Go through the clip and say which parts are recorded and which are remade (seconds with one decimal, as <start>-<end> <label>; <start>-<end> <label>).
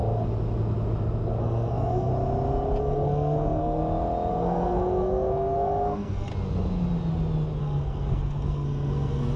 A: 0.0-1.4 recorded; 1.4-2.1 remade; 2.1-2.8 recorded; 2.8-3.8 remade; 3.8-4.3 recorded; 4.3-6.3 remade; 6.3-7.6 recorded; 7.6-9.4 remade